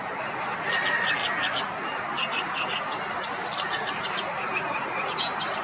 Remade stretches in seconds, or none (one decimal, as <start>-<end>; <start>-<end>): none